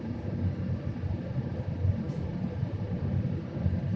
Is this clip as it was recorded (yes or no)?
no